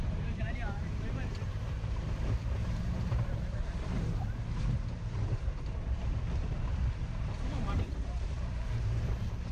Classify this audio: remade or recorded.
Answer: remade